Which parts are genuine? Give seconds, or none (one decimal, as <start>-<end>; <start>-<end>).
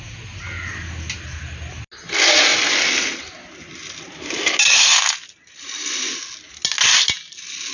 0.0-7.7